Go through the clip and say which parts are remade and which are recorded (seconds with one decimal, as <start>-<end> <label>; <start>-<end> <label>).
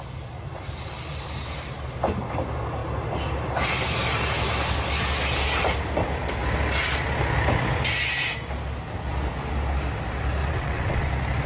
0.0-10.4 recorded; 10.4-11.1 remade; 11.1-11.5 recorded